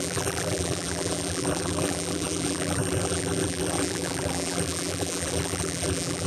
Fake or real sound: fake